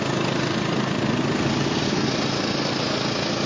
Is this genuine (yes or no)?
yes